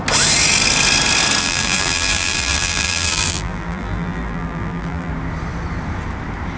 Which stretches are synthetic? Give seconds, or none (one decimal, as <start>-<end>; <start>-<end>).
1.4-5.1